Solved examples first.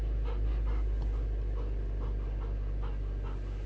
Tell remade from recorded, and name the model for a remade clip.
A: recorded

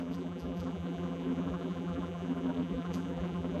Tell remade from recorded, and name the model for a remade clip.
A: remade, vocoder, BigVGAN v2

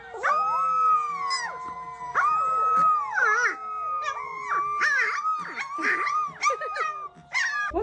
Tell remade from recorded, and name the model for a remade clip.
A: recorded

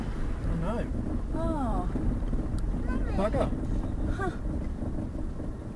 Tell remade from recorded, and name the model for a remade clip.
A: remade, vocoder, BigVGAN v2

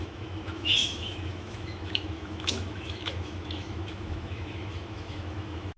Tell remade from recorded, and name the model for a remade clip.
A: remade, autoencoder, DAC-VAE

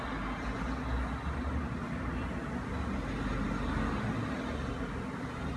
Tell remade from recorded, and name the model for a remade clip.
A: recorded